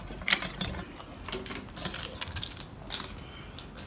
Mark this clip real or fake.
real